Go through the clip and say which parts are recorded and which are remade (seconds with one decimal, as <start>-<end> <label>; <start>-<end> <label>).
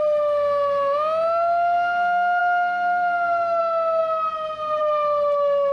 0.0-5.7 recorded